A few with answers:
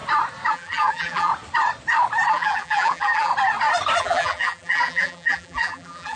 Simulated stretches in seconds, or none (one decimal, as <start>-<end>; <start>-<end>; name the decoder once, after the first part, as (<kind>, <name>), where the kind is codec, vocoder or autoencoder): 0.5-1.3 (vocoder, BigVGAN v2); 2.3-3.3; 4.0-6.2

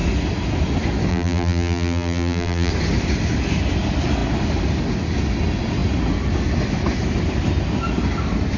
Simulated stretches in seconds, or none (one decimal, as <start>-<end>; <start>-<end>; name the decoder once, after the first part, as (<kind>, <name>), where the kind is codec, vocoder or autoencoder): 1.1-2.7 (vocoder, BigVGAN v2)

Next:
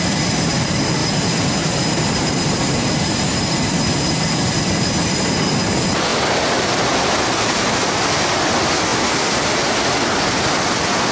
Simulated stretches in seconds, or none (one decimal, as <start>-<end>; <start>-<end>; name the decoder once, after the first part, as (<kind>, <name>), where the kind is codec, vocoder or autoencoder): 1.0-4.5 (vocoder, BigVGAN v2)

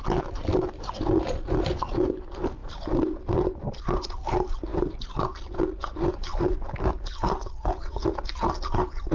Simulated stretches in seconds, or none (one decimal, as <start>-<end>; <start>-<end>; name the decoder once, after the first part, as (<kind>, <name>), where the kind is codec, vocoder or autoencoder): none